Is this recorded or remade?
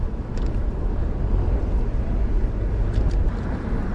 recorded